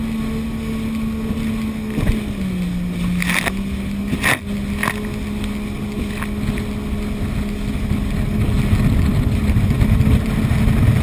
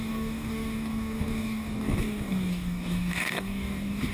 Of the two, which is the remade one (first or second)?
second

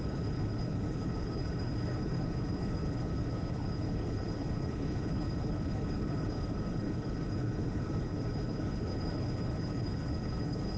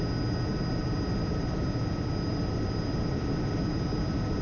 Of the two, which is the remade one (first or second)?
first